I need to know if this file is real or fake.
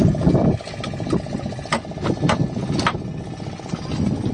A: real